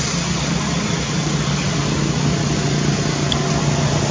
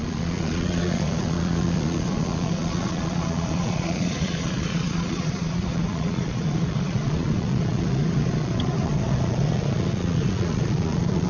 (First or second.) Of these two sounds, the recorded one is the first